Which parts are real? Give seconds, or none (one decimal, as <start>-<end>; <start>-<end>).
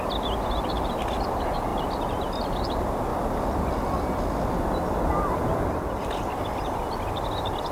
0.0-7.7